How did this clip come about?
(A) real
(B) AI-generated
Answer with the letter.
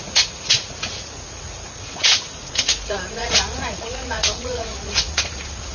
B